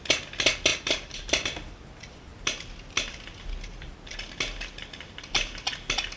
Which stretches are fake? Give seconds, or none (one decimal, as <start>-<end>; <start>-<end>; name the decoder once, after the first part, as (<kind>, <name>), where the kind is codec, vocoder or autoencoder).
0.7-1.3 (vocoder, BigVGAN v2)